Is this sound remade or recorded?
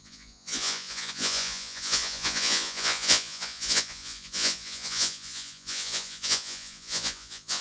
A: remade